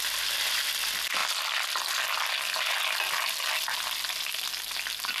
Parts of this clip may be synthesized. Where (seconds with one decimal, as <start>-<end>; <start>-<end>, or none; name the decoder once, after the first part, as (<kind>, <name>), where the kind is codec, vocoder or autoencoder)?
none